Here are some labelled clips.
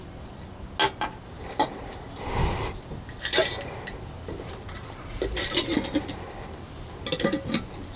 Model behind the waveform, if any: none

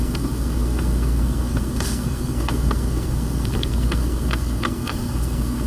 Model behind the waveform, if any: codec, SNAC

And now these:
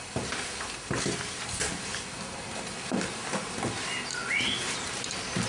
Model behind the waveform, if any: none